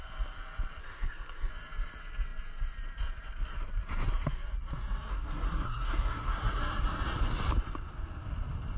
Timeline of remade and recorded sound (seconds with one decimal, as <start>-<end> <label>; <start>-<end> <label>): 0.0-0.8 recorded; 0.8-1.5 remade; 1.5-5.1 recorded; 5.1-6.6 remade; 6.6-8.8 recorded